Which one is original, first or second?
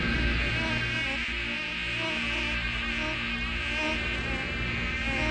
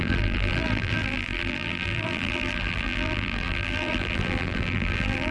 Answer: first